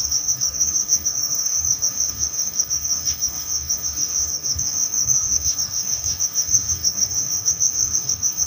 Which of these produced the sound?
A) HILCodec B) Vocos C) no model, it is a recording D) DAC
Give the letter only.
D